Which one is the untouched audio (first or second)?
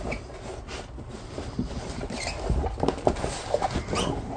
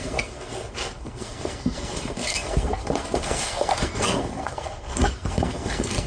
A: first